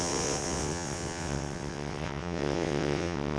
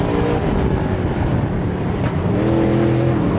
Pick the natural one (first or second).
second